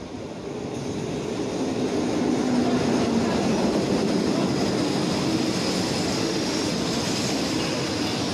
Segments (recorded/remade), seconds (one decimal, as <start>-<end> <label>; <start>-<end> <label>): 0.0-6.1 recorded; 6.1-6.7 remade; 6.7-8.3 recorded